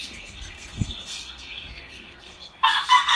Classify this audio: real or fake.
fake